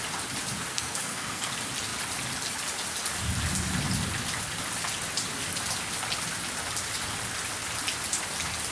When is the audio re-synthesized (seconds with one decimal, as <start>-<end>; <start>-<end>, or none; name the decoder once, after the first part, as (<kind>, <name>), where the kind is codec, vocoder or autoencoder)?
0.7-1.5 (codec, SNAC)